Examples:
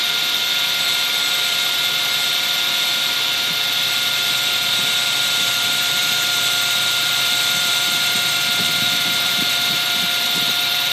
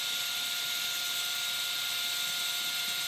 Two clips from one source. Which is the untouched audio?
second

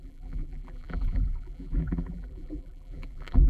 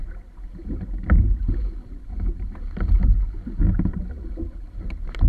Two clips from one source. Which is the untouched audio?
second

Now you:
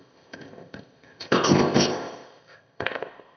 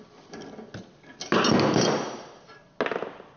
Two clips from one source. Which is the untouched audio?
second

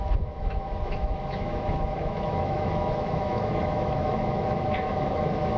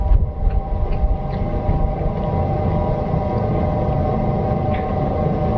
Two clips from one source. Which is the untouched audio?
second